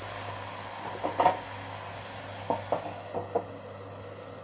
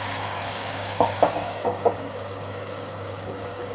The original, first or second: first